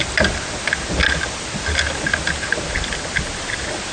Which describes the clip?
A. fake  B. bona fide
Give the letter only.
B